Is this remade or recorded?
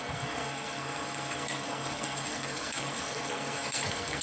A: remade